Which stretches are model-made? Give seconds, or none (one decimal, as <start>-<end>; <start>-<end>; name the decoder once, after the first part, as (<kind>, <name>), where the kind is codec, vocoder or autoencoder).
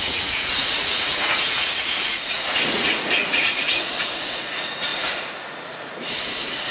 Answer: 0.0-6.7 (vocoder, Vocos)